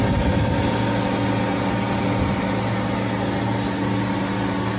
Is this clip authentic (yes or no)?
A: yes